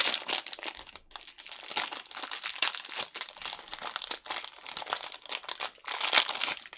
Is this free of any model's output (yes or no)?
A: yes